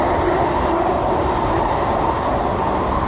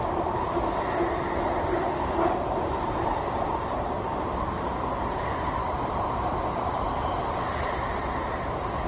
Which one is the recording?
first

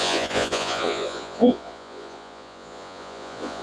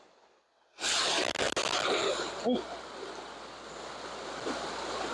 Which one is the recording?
second